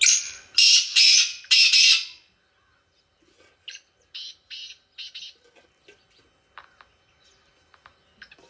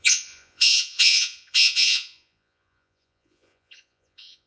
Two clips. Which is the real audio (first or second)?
first